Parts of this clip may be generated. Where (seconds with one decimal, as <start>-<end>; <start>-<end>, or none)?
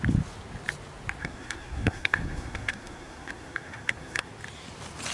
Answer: 1.2-4.3